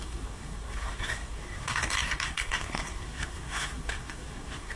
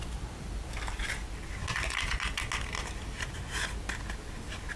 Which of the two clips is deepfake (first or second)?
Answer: first